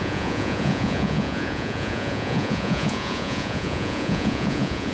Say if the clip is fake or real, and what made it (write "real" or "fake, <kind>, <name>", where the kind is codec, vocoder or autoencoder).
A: fake, vocoder, Vocos